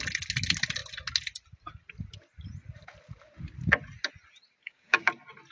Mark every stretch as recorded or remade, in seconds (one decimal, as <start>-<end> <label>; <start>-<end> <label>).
0.0-4.6 recorded; 4.6-5.1 remade; 5.1-5.5 recorded